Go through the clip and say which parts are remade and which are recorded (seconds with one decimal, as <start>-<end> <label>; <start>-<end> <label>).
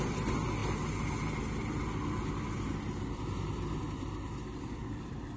0.0-5.4 recorded